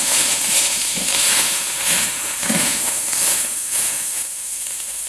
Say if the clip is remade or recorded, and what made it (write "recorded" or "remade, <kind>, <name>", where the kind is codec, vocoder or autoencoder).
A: remade, autoencoder, DAC-VAE